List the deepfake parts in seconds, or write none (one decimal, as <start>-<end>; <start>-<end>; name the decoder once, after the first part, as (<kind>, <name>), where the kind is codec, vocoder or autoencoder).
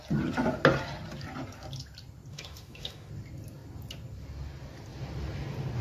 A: 2.3-3.1 (autoencoder, DAC-VAE)